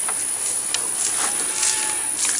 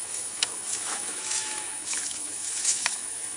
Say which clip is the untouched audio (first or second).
first